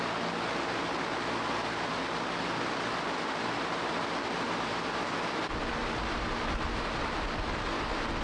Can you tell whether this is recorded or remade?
recorded